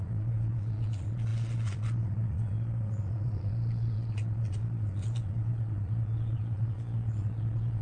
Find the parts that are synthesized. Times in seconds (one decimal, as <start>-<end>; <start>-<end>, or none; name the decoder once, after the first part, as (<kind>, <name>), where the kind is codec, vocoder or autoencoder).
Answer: 0.0-7.8 (vocoder, Vocos)